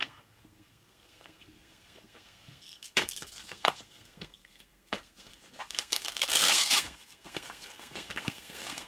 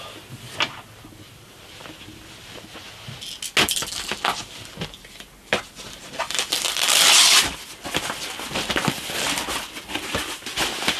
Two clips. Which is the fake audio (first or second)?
first